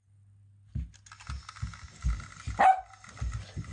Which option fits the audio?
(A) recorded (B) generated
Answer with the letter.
A